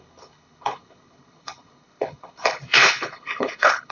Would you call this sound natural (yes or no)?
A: no